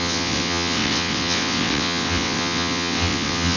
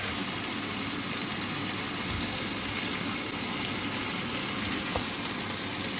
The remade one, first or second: first